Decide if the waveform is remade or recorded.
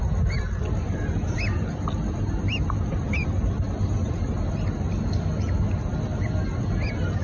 recorded